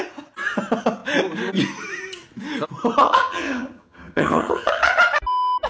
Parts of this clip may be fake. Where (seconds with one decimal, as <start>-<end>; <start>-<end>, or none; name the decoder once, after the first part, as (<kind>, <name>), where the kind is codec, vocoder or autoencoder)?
3.0-5.0 (vocoder, HiFi-GAN)